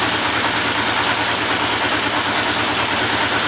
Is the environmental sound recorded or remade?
recorded